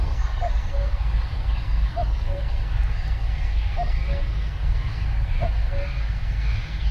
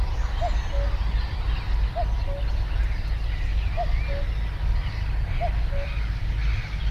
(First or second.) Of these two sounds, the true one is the second